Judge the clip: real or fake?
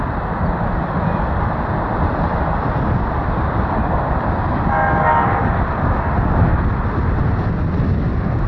real